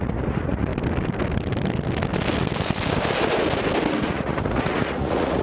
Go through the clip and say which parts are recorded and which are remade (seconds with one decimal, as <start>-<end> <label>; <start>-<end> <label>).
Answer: 0.0-0.7 remade; 0.7-3.9 recorded; 3.9-5.4 remade